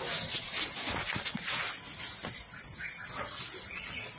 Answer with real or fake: real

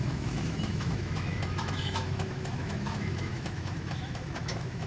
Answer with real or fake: fake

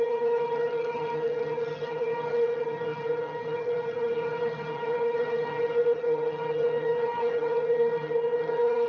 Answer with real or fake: fake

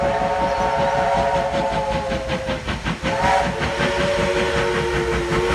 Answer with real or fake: real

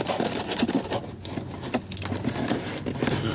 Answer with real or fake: real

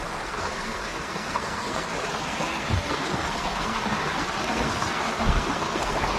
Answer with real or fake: fake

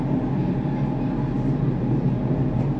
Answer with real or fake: real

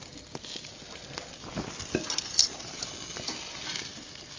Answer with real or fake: real